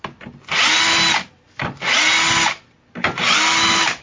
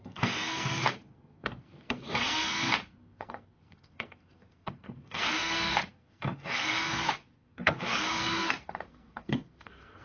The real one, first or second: first